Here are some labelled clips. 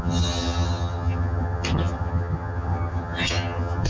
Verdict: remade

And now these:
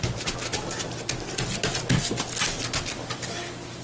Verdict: recorded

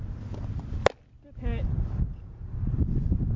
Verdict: recorded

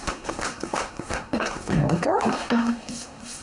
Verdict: remade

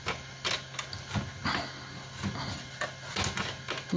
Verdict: recorded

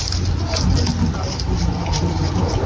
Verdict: recorded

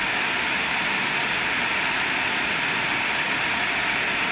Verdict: recorded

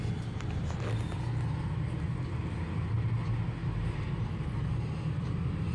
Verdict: recorded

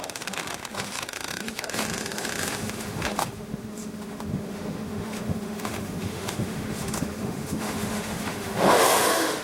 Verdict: remade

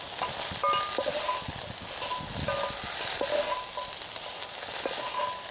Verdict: recorded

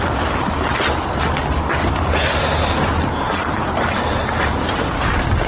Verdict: recorded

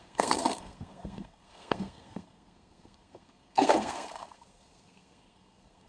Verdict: remade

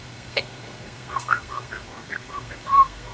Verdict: remade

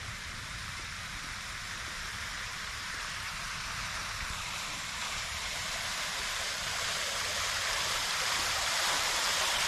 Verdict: remade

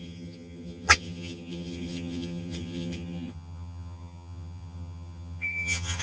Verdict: remade